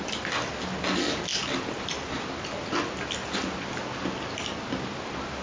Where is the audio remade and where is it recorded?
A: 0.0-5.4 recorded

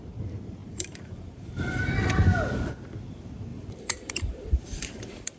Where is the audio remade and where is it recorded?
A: 0.0-0.6 recorded; 0.6-1.9 remade; 1.9-3.5 recorded; 3.5-5.4 remade

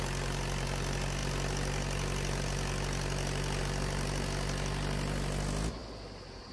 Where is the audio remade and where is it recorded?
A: 0.0-6.5 recorded

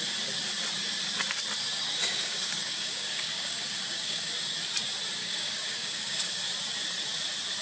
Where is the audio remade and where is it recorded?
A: 0.0-2.0 recorded; 2.0-4.3 remade; 4.3-5.2 recorded; 5.2-6.4 remade; 6.4-7.6 recorded

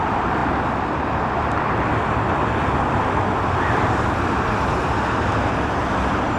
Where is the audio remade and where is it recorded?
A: 0.0-6.4 recorded

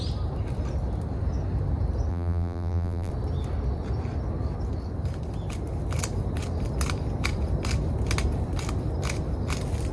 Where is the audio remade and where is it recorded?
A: 0.0-2.1 recorded; 2.1-3.1 remade; 3.1-9.9 recorded

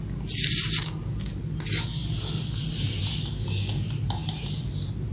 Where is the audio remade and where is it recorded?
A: 0.0-5.1 recorded